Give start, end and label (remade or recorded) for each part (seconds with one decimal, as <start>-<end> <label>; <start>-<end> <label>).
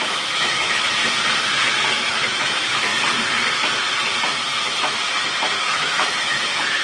0.0-1.0 remade; 1.0-1.9 recorded; 1.9-2.9 remade; 2.9-5.6 recorded; 5.6-6.8 remade